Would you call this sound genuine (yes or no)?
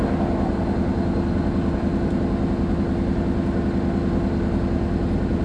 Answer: yes